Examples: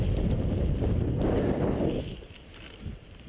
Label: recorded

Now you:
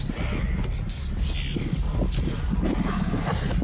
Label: recorded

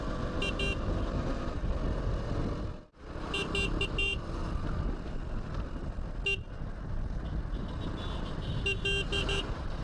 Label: recorded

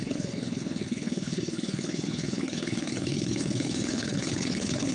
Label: remade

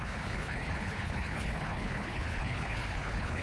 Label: remade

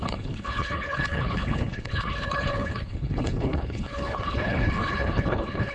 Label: remade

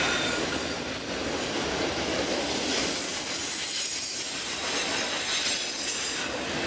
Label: recorded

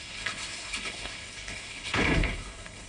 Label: remade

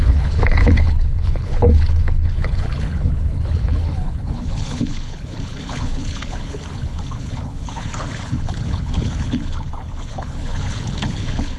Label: remade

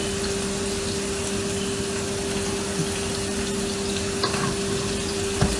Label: recorded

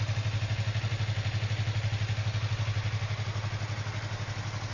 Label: recorded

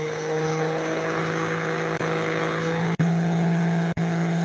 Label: remade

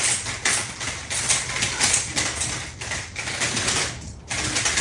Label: recorded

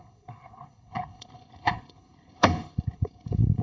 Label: remade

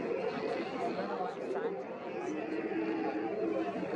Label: recorded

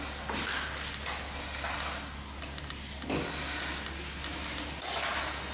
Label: recorded